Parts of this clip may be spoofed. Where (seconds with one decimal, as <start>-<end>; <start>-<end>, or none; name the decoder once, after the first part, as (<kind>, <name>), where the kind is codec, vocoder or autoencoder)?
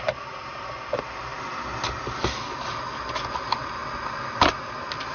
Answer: none